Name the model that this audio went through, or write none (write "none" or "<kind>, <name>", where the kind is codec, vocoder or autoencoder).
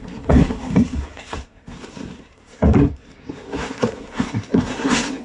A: codec, SNAC